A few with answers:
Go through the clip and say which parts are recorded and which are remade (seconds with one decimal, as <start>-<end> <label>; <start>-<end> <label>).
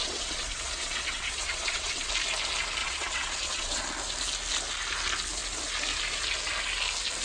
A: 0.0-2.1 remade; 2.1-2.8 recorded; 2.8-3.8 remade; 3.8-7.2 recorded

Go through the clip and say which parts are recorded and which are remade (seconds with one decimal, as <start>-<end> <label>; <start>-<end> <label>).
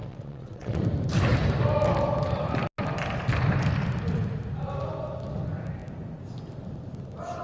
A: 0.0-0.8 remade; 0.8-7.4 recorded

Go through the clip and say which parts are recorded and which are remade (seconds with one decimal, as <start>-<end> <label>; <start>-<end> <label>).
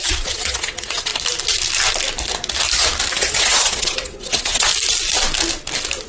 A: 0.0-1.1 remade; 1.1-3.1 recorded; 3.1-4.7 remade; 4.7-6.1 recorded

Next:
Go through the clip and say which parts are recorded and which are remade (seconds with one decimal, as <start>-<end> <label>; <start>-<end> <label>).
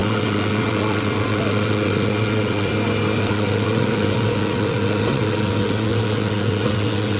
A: 0.0-2.7 remade; 2.7-3.2 recorded; 3.2-7.2 remade